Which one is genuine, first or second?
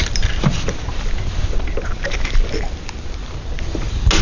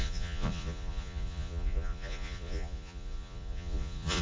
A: first